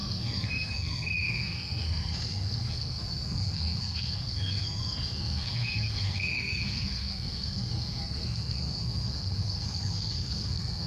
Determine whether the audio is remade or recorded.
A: remade